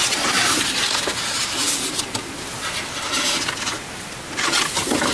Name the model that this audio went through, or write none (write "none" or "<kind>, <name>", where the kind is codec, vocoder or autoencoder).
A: none